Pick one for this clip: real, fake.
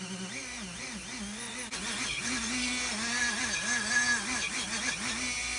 real